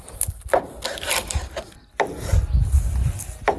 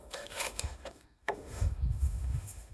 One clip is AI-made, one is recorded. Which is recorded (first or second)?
first